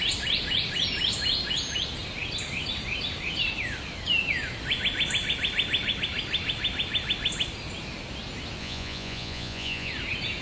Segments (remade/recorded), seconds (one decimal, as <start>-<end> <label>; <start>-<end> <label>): 0.0-8.6 recorded; 8.6-9.9 remade; 9.9-10.4 recorded